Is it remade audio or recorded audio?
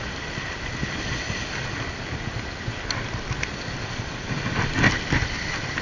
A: recorded